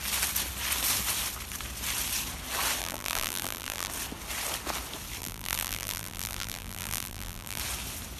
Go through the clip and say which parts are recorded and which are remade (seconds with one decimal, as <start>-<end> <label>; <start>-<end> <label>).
0.0-2.8 recorded; 2.8-3.9 remade; 3.9-5.2 recorded; 5.2-7.6 remade; 7.6-8.2 recorded